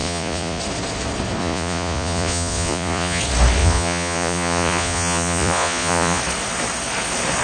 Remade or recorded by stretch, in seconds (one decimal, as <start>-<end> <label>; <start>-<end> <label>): 0.0-0.6 remade; 0.6-1.4 recorded; 1.4-3.2 remade; 3.2-3.6 recorded; 3.6-6.2 remade; 6.2-7.4 recorded